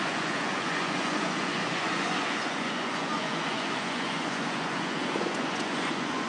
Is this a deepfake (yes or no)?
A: yes